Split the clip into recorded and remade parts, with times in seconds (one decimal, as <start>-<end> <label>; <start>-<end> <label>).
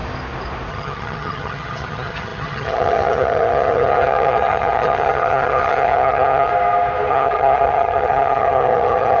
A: 0.0-0.7 recorded; 0.7-6.5 remade; 6.5-7.1 recorded; 7.1-9.2 remade